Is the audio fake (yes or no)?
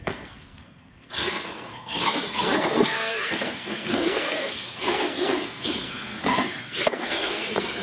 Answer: yes